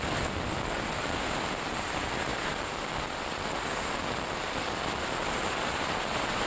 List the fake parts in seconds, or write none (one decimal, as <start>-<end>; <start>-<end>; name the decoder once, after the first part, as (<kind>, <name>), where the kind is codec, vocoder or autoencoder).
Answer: none